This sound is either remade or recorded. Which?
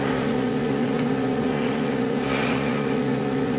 remade